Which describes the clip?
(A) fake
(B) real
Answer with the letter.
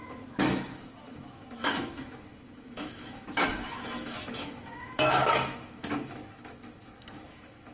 A